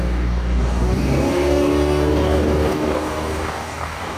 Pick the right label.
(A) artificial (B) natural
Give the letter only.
A